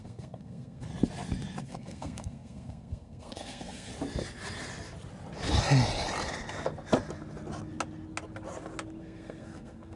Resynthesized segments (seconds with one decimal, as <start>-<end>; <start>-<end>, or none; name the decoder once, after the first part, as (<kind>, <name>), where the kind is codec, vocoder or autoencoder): 0.0-0.9 (codec, SNAC); 1.6-3.9; 9.0-10.0